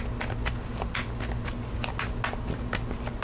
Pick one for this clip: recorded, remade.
recorded